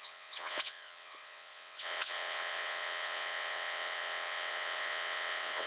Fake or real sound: fake